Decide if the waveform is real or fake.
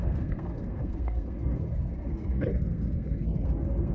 fake